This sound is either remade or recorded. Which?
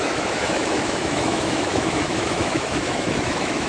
remade